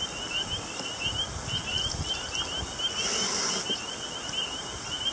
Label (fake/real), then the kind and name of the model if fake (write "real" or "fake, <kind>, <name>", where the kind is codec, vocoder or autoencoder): real